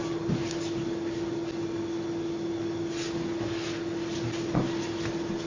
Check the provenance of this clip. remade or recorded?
recorded